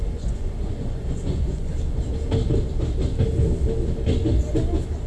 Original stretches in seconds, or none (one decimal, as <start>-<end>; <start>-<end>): 1.7-5.1